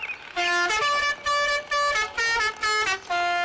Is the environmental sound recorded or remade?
recorded